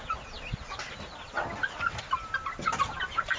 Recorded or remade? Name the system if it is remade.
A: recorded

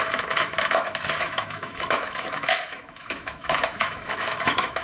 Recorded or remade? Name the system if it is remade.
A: remade, autoencoder, DAC-VAE